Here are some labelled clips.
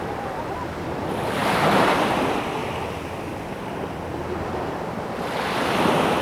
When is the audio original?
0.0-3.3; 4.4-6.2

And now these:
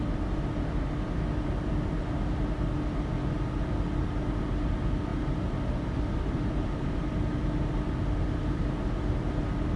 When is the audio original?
0.0-5.1; 7.0-9.8

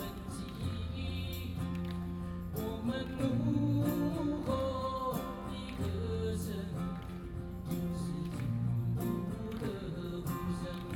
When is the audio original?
1.5-3.2; 4.3-6.9

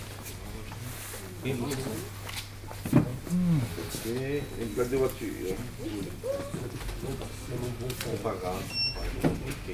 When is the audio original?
0.0-9.7